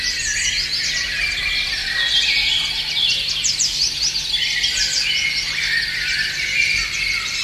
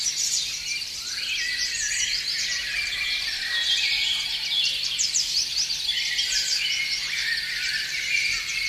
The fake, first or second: second